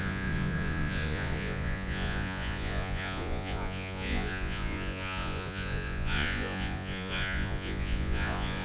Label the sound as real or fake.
fake